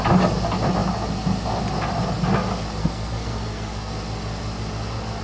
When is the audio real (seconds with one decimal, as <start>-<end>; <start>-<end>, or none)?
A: 0.0-2.8; 3.9-5.2